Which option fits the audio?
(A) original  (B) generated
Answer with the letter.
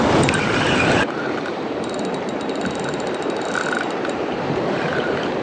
A